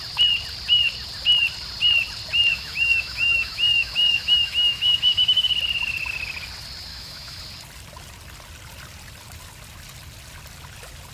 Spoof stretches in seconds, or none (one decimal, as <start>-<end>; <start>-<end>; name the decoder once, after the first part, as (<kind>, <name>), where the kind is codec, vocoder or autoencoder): 2.5-5.5 (autoencoder, DAC-VAE); 6.9-7.4